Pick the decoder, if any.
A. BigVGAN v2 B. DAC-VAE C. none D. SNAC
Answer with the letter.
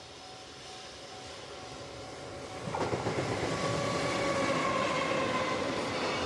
C